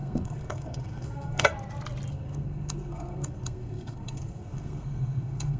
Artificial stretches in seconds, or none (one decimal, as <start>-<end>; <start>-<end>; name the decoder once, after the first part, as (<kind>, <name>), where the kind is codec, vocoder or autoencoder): 0.0-1.5 (codec, SNAC); 2.1-5.6